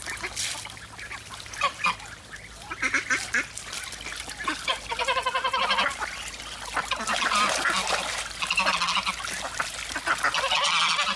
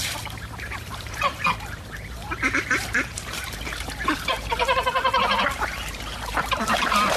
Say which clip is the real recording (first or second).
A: first